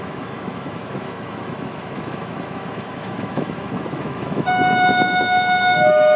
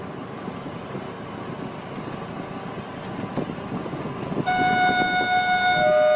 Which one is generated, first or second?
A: first